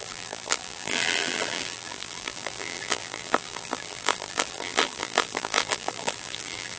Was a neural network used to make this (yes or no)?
yes